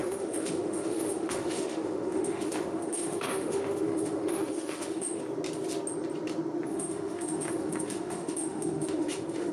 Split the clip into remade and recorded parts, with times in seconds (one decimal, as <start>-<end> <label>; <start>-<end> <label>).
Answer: 0.0-5.2 remade; 5.2-6.7 recorded; 6.7-9.5 remade